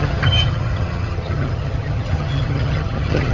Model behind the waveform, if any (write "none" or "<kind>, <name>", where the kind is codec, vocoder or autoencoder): vocoder, HiFi-GAN